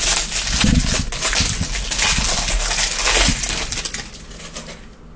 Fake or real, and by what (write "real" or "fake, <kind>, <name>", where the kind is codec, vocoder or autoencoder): real